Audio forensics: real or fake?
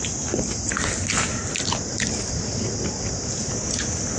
real